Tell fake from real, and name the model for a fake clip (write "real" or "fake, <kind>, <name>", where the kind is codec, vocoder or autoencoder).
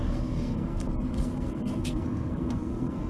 fake, codec, SNAC